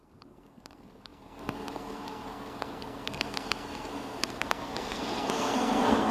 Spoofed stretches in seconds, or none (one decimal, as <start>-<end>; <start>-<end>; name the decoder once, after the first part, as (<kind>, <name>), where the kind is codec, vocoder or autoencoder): 0.0-6.1 (codec, SNAC)